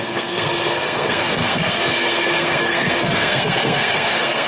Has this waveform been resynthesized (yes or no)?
yes